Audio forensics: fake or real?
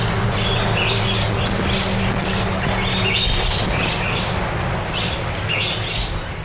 real